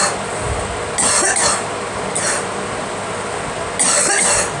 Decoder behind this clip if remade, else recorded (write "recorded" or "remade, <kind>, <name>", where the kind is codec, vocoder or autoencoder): recorded